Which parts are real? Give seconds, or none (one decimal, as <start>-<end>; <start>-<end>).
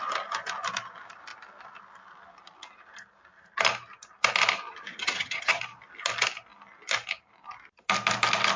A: 0.0-4.9; 5.6-8.6